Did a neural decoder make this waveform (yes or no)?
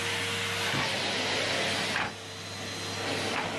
no